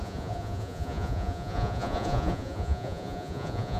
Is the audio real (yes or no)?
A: no